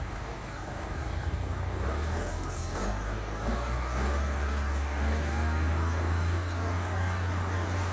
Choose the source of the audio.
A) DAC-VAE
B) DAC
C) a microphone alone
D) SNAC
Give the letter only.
B